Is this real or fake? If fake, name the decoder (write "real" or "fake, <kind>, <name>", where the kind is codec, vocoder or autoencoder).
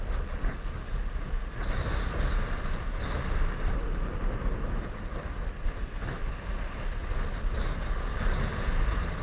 real